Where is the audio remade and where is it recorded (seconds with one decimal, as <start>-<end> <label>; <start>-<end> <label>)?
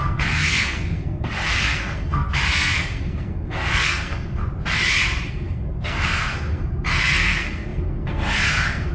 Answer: 0.0-4.4 remade; 4.4-5.3 recorded; 5.3-8.9 remade